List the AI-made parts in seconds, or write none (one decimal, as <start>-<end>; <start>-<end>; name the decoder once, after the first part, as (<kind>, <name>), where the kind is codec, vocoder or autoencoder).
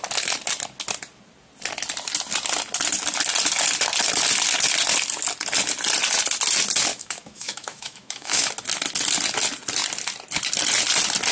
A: 6.9-8.5 (autoencoder, DAC-VAE)